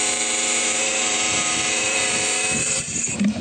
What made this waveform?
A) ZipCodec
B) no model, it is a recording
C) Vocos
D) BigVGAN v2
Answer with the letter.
D